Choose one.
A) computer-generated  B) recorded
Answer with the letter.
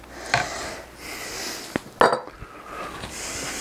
B